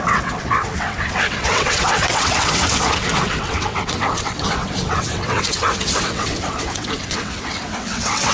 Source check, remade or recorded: remade